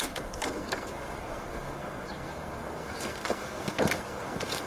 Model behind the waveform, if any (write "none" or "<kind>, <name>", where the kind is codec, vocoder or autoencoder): codec, SNAC